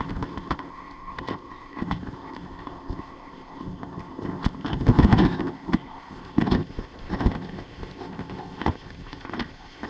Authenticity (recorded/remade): remade